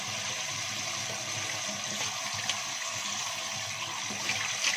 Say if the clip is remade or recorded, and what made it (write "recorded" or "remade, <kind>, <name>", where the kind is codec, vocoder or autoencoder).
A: recorded